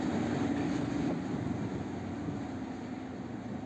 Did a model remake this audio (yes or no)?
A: no